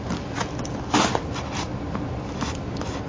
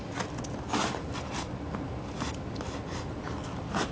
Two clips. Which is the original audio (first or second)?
first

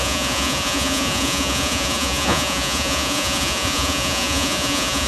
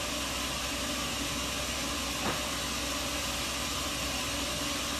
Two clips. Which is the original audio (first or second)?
second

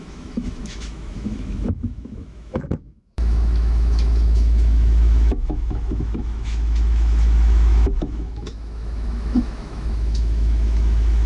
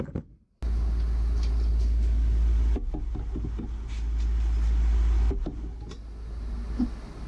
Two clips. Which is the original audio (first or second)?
second